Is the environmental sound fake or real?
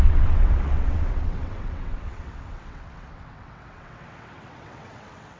fake